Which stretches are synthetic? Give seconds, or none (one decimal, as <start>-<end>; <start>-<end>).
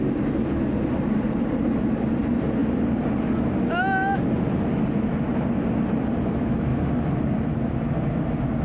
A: none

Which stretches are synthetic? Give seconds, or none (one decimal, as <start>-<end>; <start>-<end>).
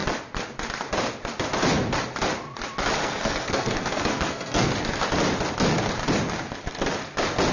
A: 3.0-4.7